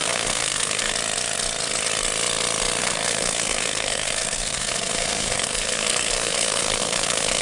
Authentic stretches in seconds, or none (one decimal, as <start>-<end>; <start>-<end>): 0.9-2.8